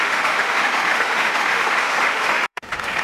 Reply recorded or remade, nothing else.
remade